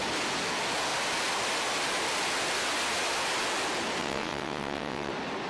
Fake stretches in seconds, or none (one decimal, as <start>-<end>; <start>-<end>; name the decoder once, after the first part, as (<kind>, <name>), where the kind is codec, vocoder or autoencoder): 4.0-5.1 (vocoder, WaveNeXt)